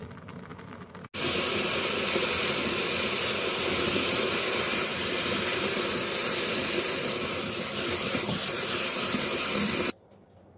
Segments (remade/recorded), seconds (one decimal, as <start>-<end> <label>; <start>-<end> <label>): 0.0-10.6 recorded

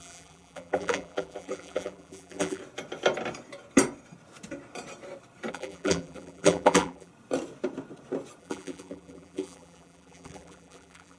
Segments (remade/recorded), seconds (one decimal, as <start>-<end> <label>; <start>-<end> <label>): 0.0-2.6 remade; 2.6-5.5 recorded; 5.5-7.1 remade; 7.1-8.4 recorded; 8.4-11.2 remade

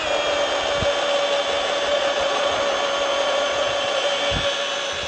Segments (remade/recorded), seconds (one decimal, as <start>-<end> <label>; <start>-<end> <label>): 0.0-1.9 recorded; 1.9-2.6 remade; 2.6-3.1 recorded; 3.1-4.1 remade; 4.1-5.1 recorded

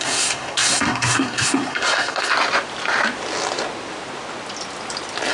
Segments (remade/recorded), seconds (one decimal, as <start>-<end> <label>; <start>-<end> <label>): 0.0-2.3 remade; 2.3-5.3 recorded

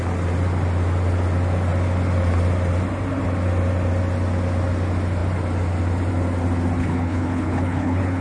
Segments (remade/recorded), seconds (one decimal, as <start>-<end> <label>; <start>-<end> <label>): 0.0-6.8 recorded; 6.8-8.2 remade

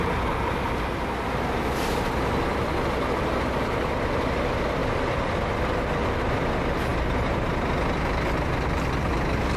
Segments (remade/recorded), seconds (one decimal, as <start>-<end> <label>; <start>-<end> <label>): 0.0-6.9 recorded; 6.9-7.5 remade; 7.5-9.6 recorded

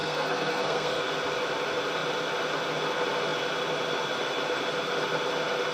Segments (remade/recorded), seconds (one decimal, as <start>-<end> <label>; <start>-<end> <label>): 0.0-1.0 remade; 1.0-5.7 recorded

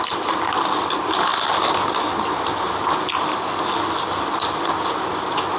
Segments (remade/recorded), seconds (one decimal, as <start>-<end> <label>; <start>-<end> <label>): 0.0-5.6 recorded